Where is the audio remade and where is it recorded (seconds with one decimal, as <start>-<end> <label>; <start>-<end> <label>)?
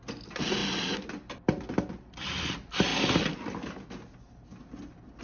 0.0-5.2 recorded